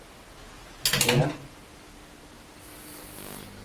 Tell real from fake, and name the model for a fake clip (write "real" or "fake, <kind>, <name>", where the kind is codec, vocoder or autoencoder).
real